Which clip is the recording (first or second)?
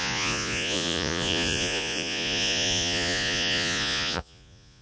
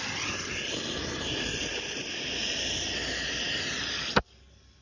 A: second